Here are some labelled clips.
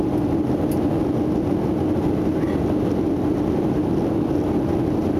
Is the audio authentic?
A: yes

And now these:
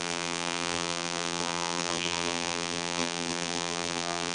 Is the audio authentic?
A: no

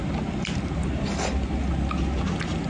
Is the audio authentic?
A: yes